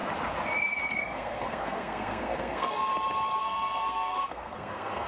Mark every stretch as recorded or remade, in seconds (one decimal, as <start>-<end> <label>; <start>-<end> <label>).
0.0-1.0 recorded; 1.0-2.9 remade; 2.9-3.4 recorded; 3.4-5.1 remade